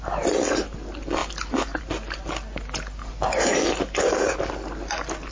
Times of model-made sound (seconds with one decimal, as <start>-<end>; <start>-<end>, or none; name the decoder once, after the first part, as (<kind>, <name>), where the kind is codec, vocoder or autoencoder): none